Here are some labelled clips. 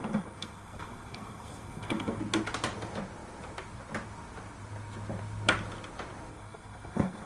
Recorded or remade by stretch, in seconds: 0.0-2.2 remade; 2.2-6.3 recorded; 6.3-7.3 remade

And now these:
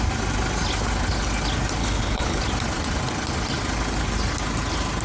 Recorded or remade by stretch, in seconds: 0.0-1.8 recorded; 1.8-2.4 remade; 2.4-5.0 recorded

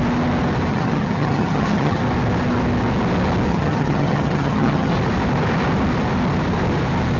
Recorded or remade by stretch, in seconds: 0.0-0.7 recorded; 0.7-2.0 remade; 2.0-3.5 recorded; 3.5-4.9 remade; 4.9-7.2 recorded

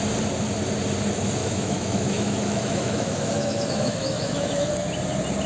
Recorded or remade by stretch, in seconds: 0.0-1.4 recorded; 1.4-4.7 remade; 4.7-5.5 recorded

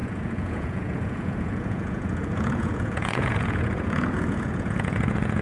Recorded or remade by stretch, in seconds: 0.0-5.4 remade

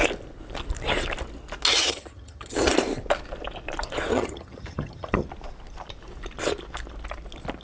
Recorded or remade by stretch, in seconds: 0.0-1.7 recorded; 1.7-2.7 remade; 2.7-4.1 recorded; 4.1-5.3 remade; 5.3-7.6 recorded

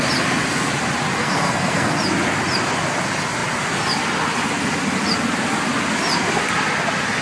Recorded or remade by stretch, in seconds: 0.0-1.2 recorded; 1.2-2.0 remade; 2.0-7.2 recorded